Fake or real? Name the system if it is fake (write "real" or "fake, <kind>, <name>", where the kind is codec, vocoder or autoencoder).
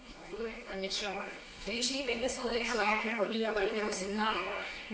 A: fake, codec, SNAC